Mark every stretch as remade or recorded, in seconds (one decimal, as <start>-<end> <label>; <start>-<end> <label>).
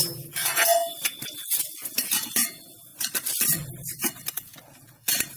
0.0-2.9 remade; 2.9-4.0 recorded; 4.0-5.4 remade